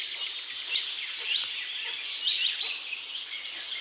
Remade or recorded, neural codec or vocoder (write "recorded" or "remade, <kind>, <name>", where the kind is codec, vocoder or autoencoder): recorded